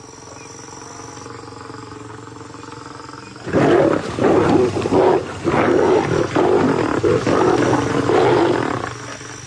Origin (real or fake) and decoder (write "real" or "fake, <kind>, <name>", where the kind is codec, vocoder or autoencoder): real